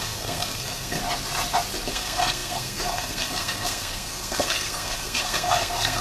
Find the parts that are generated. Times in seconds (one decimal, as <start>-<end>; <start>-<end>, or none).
0.0-1.0; 1.9-6.0